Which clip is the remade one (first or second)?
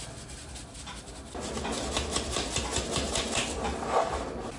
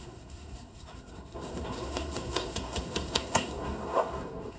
second